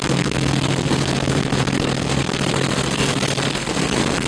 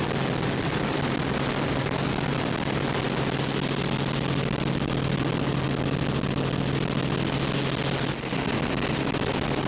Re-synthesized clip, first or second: first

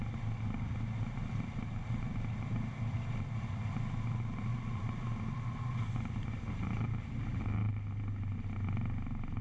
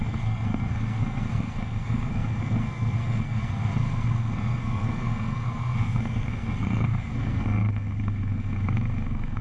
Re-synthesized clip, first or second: second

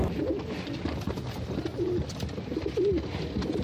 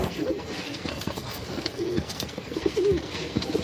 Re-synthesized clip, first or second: second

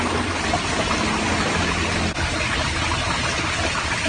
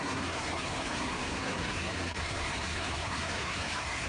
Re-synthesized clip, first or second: second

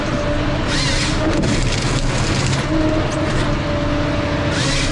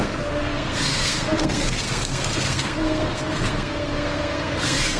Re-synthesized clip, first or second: second